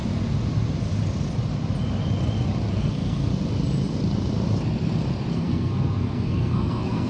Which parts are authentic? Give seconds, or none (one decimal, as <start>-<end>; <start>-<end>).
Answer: 0.0-2.7; 3.3-5.3